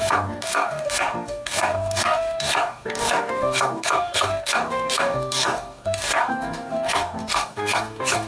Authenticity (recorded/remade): remade